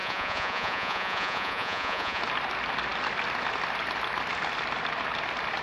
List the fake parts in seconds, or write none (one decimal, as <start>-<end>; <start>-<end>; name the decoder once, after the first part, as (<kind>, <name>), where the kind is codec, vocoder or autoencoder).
0.0-2.2 (vocoder, Vocos)